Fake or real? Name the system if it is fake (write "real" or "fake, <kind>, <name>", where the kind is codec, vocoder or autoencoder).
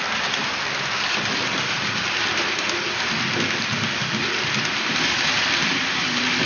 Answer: fake, vocoder, BigVGAN v2